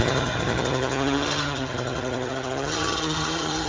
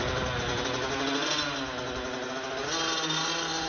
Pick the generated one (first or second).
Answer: first